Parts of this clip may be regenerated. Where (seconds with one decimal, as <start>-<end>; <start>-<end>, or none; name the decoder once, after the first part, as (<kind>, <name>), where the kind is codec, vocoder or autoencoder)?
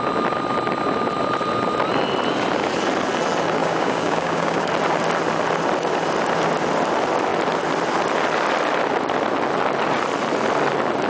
3.6-4.7 (codec, DAC)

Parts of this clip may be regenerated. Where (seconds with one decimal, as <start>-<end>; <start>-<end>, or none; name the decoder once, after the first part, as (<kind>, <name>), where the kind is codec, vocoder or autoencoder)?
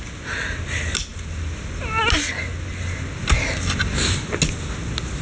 none